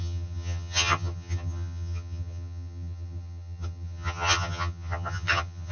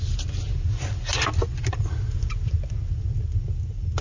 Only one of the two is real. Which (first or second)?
second